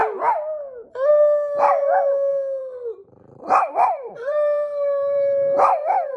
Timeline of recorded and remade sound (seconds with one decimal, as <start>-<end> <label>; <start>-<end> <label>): 0.0-3.0 recorded; 3.0-6.2 remade